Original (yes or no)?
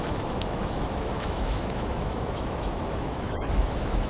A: no